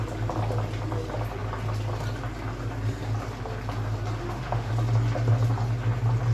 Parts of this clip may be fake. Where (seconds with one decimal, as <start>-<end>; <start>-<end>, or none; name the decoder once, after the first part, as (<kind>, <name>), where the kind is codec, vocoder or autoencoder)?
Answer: 4.2-4.7 (autoencoder, DAC-VAE)